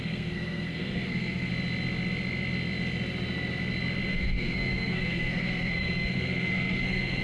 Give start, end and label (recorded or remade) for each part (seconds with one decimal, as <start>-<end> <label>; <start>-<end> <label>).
0.0-1.5 remade; 1.5-4.1 recorded; 4.1-7.2 remade